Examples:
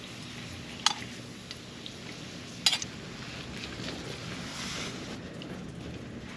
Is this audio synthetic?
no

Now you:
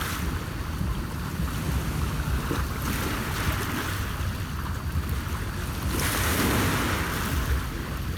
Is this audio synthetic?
no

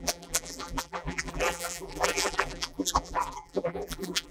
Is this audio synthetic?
yes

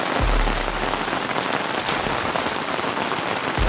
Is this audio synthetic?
no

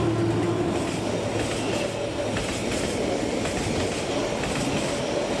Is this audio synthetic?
no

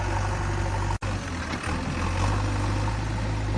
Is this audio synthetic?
no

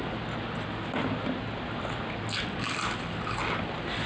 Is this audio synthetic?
no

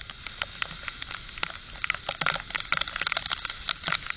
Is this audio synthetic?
no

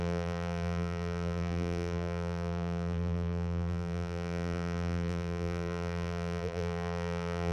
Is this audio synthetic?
yes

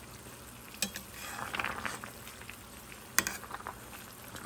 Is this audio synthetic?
no